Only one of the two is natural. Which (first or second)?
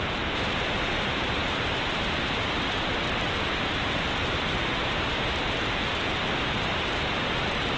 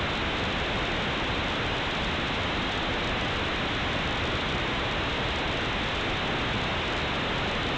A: second